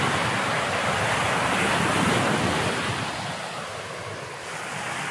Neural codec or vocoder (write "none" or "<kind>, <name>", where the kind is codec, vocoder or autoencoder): none